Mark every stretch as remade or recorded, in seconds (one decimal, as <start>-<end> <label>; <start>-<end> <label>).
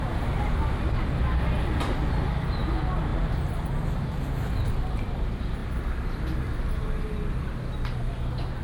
0.0-8.6 recorded